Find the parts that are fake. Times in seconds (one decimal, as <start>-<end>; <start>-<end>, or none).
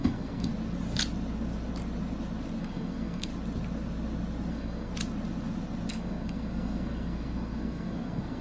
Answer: 0.0-0.5; 2.6-3.3; 4.5-4.9; 5.9-8.4